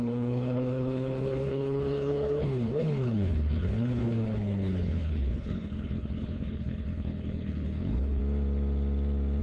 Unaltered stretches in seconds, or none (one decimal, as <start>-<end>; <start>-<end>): 8.2-9.4